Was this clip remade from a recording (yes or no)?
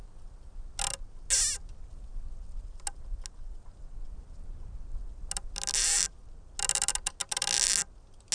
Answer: no